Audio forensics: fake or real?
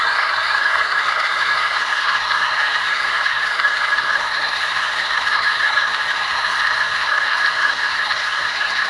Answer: fake